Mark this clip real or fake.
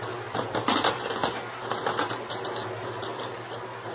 real